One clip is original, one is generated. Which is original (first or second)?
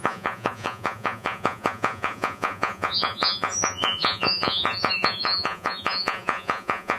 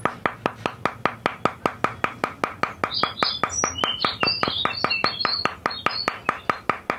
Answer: second